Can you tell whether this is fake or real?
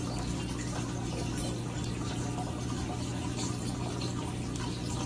real